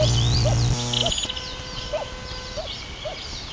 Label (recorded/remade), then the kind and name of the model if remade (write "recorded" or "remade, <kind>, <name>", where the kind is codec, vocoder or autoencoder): recorded